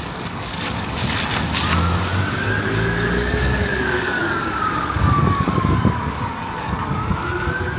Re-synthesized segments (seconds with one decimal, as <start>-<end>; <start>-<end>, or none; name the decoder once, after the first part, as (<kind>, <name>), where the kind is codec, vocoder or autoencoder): 0.0-1.0 (codec, DAC); 2.3-7.8